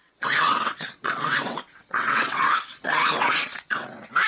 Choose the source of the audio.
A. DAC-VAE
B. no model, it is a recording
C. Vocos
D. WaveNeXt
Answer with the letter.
D